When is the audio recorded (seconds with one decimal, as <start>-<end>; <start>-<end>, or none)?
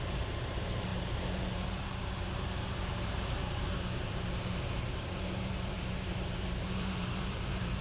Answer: none